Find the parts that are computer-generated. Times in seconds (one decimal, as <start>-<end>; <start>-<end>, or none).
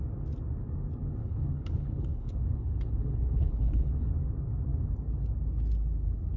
1.2-4.1